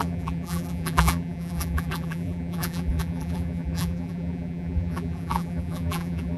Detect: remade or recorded remade